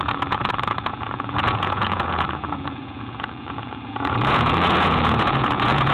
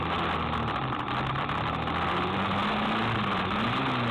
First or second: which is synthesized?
first